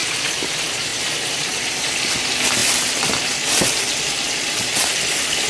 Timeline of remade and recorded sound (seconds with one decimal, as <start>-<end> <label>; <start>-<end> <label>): 0.0-0.5 recorded; 0.5-2.6 remade; 2.6-5.5 recorded